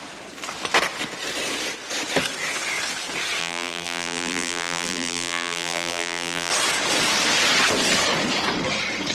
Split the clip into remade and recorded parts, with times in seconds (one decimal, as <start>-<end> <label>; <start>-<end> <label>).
0.0-3.4 recorded; 3.4-6.5 remade; 6.5-9.1 recorded